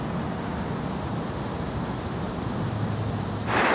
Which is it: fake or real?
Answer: real